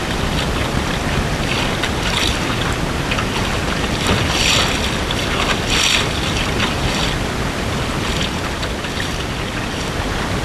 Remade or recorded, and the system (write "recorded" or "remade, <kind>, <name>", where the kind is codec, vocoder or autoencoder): recorded